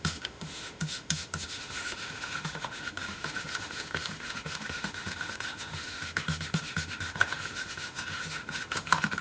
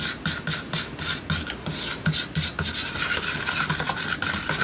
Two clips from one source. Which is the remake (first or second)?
first